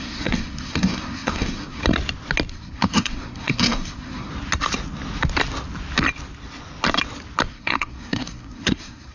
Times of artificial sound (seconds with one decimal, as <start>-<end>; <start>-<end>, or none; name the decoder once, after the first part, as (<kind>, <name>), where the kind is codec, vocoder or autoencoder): 0.0-1.8 (codec, SNAC); 2.5-4.3; 7.5-9.1